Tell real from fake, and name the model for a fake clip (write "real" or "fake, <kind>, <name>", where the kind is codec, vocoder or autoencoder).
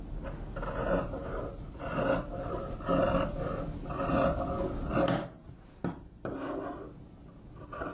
real